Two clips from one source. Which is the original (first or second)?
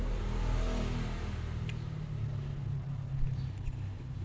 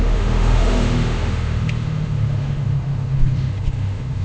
first